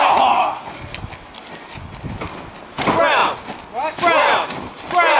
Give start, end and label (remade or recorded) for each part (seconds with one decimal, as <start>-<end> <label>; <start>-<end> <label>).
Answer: 0.0-5.2 recorded